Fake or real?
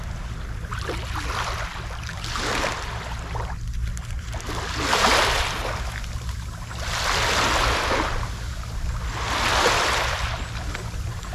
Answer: real